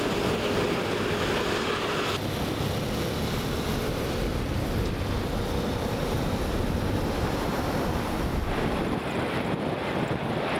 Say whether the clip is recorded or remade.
recorded